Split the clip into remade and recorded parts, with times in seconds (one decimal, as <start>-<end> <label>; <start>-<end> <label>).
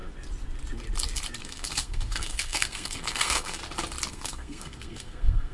0.0-1.4 recorded; 1.4-3.6 remade; 3.6-4.1 recorded; 4.1-5.5 remade